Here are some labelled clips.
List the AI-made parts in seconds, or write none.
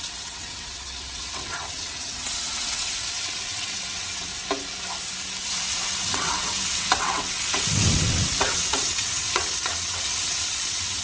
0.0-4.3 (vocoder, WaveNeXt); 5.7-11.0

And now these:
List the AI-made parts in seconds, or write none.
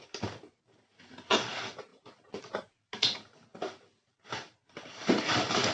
none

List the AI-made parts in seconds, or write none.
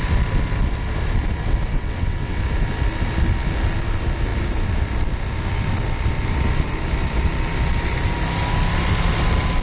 1.7-2.4 (vocoder, WaveNeXt)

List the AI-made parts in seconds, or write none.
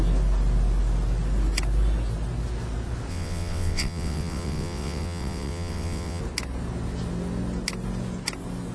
3.1-6.2 (vocoder, WaveNeXt)